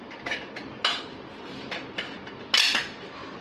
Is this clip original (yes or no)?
yes